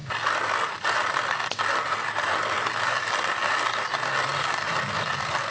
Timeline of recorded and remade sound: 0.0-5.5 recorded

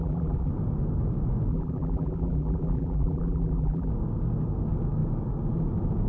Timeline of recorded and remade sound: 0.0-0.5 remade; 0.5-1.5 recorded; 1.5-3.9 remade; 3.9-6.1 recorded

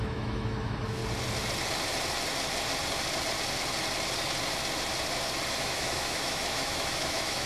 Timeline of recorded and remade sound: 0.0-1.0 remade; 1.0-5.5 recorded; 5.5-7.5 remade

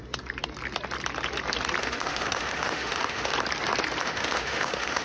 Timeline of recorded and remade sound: 0.0-1.8 recorded; 1.8-3.3 remade; 3.3-4.0 recorded; 4.0-5.0 remade

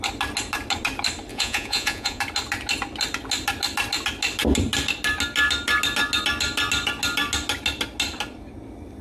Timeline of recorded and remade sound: 0.0-1.3 recorded; 1.3-2.2 remade; 2.2-9.0 recorded

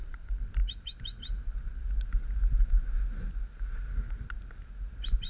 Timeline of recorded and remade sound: 0.0-0.6 remade; 0.6-1.3 recorded; 1.3-1.8 remade; 1.8-5.3 recorded

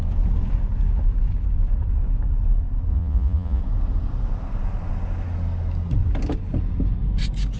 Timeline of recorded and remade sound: 0.0-2.9 recorded; 2.9-3.6 remade; 3.6-7.6 recorded

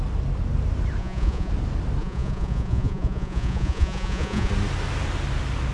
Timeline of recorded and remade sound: 0.0-1.0 recorded; 1.0-1.5 remade; 1.5-2.0 recorded; 2.0-4.5 remade; 4.5-5.7 recorded